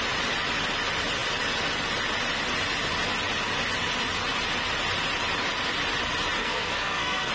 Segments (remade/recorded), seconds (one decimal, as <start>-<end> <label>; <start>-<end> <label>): 0.0-6.4 recorded; 6.4-7.3 remade